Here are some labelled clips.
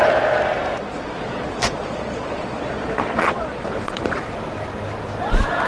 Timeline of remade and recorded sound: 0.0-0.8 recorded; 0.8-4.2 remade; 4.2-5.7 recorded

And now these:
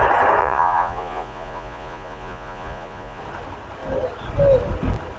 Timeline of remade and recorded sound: 0.0-0.4 recorded; 0.4-3.2 remade; 3.2-5.2 recorded

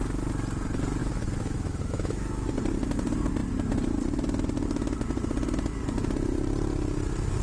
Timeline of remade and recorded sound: 0.0-1.0 recorded; 1.0-2.6 remade; 2.6-7.4 recorded

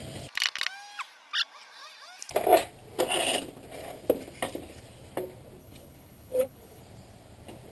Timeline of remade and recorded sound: 0.0-5.6 recorded; 5.6-6.8 remade; 6.8-7.7 recorded

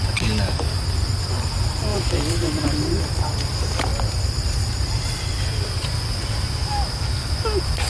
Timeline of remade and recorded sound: 0.0-1.9 recorded; 1.9-3.0 remade; 3.0-3.9 recorded; 3.9-5.2 remade; 5.2-7.9 recorded

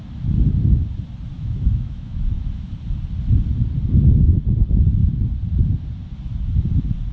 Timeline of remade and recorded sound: 0.0-1.3 recorded; 1.3-2.7 remade; 2.7-7.1 recorded

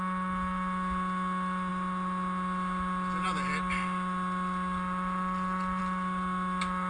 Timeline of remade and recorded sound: 0.0-6.9 recorded

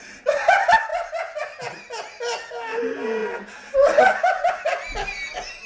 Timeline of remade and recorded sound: 0.0-5.7 recorded